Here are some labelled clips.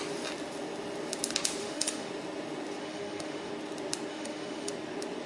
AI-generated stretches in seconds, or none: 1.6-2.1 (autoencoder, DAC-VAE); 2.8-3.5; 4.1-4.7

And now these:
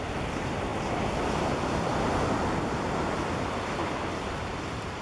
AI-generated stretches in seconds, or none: none

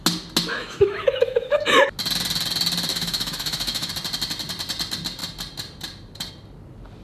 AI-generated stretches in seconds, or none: 0.6-1.7 (autoencoder, DAC-VAE); 2.9-3.9

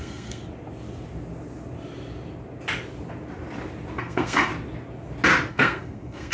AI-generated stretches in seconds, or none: 0.0-0.4 (codec, SNAC); 4.0-4.5; 5.5-6.3

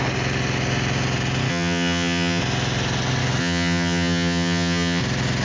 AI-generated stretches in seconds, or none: 1.5-2.4 (vocoder, HiFi-GAN); 3.4-5.0